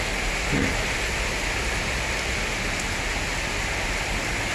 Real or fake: real